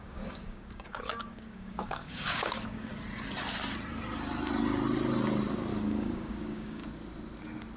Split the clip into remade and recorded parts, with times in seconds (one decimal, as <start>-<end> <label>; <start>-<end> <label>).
0.0-2.9 remade; 2.9-5.7 recorded; 5.7-6.8 remade; 6.8-7.8 recorded